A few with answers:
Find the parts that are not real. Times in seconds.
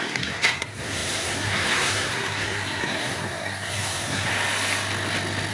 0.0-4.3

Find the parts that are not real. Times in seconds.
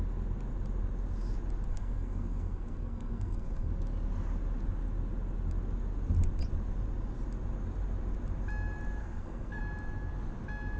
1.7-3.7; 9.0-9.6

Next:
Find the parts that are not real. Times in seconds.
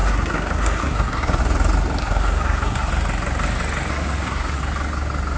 0.0-1.4; 2.0-2.9; 3.9-4.6